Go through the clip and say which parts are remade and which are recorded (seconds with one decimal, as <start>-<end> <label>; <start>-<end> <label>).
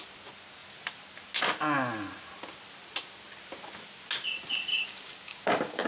0.0-4.7 recorded; 4.7-5.9 remade